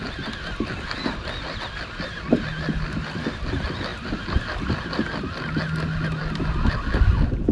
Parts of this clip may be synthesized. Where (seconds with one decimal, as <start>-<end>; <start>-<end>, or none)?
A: none